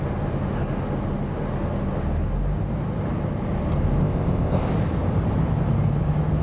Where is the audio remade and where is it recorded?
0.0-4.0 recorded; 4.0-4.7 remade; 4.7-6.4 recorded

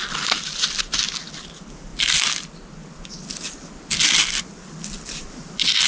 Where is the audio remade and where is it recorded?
0.0-5.9 recorded

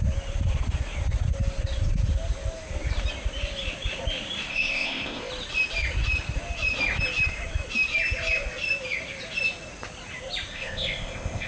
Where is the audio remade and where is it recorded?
0.0-4.5 recorded; 4.5-5.3 remade; 5.3-10.5 recorded; 10.5-11.5 remade

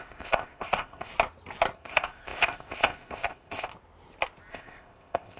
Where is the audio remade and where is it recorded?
0.0-1.1 remade; 1.1-1.7 recorded; 1.7-3.7 remade; 3.7-4.5 recorded; 4.5-5.4 remade

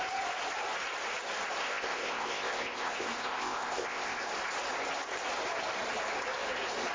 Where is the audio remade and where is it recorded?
0.0-1.6 recorded; 1.6-4.3 remade; 4.3-6.9 recorded

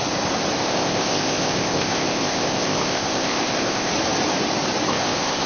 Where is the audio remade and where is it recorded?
0.0-0.6 recorded; 0.6-3.9 remade; 3.9-4.9 recorded; 4.9-5.5 remade